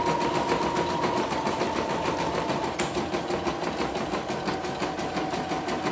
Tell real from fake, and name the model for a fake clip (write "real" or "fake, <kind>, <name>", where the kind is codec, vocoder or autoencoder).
real